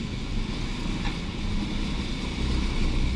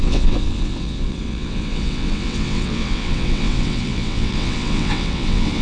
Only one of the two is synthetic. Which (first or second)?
second